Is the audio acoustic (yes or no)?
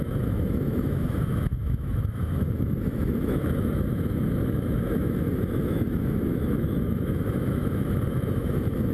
no